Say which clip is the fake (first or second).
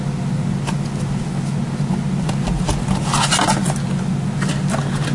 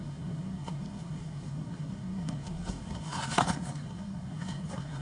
second